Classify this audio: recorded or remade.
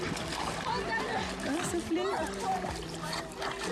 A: recorded